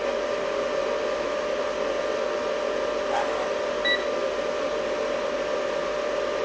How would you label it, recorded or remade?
recorded